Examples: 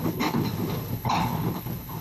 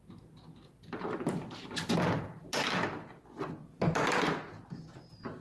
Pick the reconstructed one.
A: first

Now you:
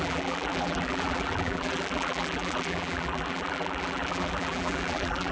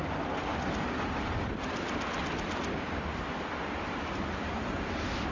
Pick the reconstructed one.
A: first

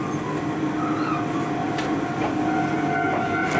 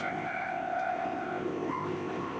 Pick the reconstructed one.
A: second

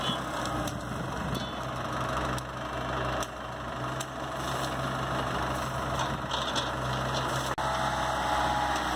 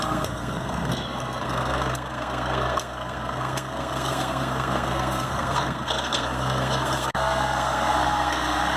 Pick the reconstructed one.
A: second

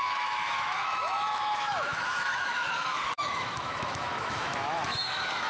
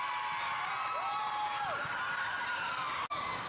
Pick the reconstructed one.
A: first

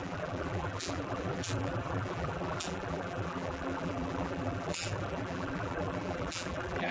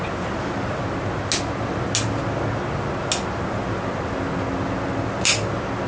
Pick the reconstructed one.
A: first